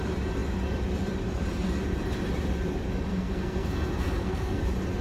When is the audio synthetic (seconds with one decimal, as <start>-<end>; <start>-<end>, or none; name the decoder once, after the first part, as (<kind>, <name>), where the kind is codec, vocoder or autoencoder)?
3.1-4.6 (codec, SNAC)

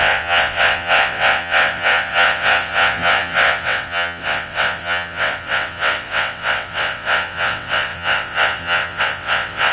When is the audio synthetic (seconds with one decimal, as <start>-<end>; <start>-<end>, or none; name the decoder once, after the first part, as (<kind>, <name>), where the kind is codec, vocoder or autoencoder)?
0.0-9.7 (vocoder, WaveNeXt)

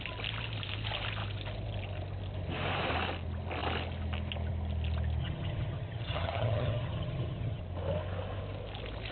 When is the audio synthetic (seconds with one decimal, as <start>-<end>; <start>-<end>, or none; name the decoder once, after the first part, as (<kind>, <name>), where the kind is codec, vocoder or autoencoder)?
5.2-7.6 (vocoder, HiFi-GAN)

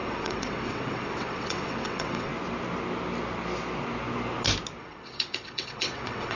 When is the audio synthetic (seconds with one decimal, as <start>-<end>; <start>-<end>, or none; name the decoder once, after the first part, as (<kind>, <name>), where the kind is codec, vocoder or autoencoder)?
0.0-2.3 (vocoder, WaveNeXt); 4.8-6.3

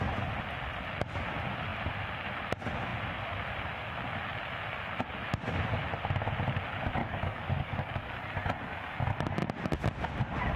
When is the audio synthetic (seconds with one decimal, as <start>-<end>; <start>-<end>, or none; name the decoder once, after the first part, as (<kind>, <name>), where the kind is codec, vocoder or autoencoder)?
7.0-8.1 (codec, DAC)

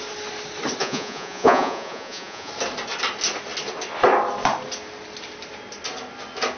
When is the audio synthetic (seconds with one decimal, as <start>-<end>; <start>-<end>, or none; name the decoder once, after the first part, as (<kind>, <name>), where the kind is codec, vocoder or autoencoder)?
0.8-2.5 (vocoder, Vocos)

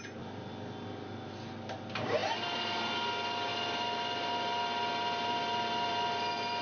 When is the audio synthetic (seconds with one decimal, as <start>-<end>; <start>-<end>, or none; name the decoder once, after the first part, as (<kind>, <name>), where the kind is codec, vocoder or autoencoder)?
none